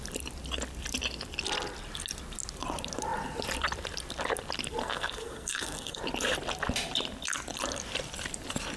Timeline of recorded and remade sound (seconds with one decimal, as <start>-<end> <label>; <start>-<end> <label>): 0.0-4.8 recorded; 4.8-6.0 remade; 6.0-8.8 recorded